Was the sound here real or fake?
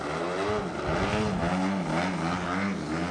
real